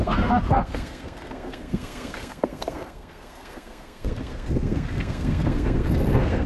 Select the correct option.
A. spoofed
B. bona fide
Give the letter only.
A